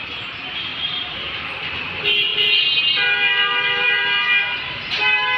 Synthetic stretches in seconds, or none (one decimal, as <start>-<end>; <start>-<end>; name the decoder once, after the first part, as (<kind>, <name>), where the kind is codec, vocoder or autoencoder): 0.7-1.7 (vocoder, BigVGAN v2); 2.3-5.4